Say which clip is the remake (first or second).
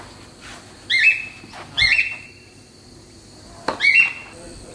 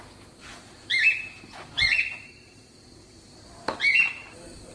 second